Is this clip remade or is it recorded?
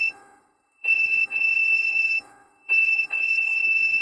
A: remade